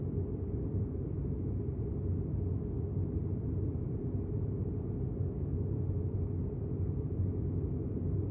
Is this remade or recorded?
recorded